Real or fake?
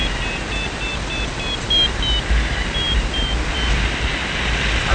real